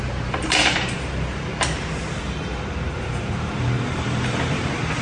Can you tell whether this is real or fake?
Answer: fake